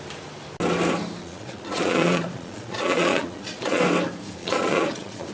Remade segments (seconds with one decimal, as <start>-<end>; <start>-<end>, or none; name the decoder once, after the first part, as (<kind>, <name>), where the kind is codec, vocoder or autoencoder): 1.2-3.8 (vocoder, Vocos); 4.4-5.3